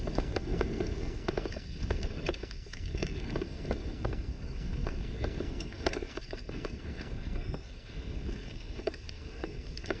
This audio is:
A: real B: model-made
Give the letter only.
B